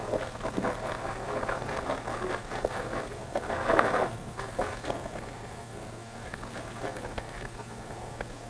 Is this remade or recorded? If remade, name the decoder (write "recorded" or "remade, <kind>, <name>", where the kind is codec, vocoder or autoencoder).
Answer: remade, codec, SNAC